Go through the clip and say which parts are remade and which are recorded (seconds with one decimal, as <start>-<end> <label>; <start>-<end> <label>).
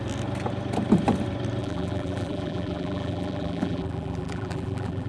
0.0-1.6 recorded; 1.6-5.1 remade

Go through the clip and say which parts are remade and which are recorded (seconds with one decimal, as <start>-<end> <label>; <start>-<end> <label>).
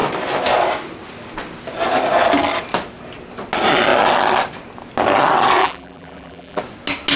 0.0-5.6 recorded; 5.6-6.6 remade; 6.6-7.2 recorded